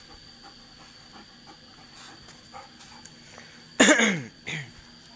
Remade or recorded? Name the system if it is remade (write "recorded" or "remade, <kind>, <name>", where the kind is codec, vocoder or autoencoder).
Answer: recorded